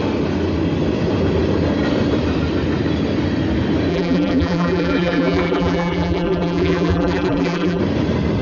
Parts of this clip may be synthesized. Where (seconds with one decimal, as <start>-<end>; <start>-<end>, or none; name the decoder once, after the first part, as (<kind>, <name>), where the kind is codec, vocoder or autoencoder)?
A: 3.9-7.8 (vocoder, BigVGAN v2)